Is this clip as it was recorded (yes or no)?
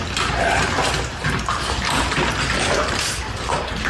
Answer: yes